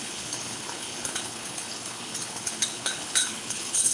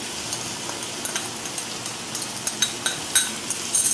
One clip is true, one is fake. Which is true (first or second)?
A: second